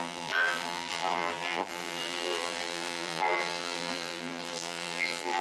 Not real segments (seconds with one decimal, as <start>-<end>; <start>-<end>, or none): 0.0-5.4